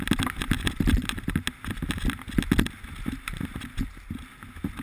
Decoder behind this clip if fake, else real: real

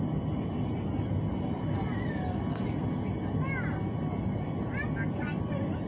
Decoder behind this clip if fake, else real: real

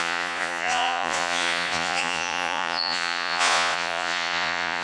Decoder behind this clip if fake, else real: fake, vocoder, Vocos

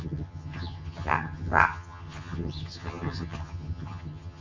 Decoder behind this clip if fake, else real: fake, vocoder, HiFi-GAN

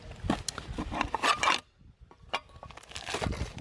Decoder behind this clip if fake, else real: real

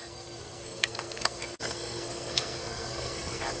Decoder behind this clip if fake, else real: fake, codec, SNAC